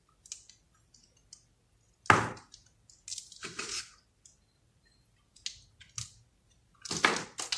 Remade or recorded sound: recorded